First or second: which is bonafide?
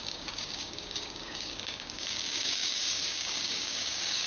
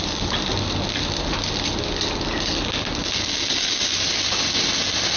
second